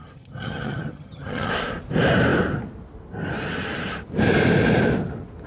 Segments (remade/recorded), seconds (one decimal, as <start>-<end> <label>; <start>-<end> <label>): 0.0-1.5 remade; 1.5-5.5 recorded